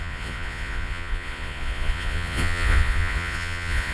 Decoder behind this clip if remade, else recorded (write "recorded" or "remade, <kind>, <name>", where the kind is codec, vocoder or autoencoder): remade, vocoder, Vocos